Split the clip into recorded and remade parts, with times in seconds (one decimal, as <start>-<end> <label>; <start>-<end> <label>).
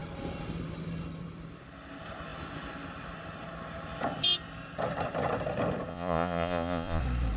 0.0-5.9 recorded; 5.9-7.0 remade; 7.0-7.4 recorded